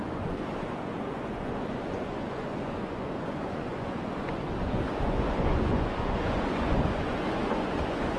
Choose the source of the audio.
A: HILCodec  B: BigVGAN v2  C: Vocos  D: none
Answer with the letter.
C